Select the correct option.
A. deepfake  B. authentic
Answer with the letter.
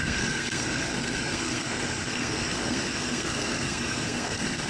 A